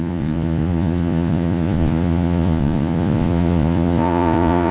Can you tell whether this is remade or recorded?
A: remade